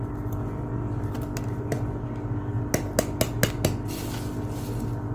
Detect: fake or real real